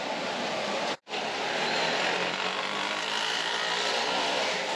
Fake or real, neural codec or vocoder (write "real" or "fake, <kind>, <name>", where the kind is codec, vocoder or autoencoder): real